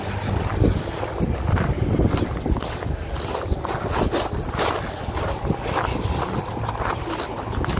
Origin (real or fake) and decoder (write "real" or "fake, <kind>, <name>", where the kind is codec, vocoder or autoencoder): real